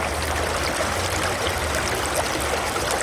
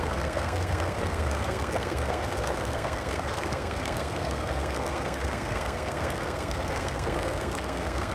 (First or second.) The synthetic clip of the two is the second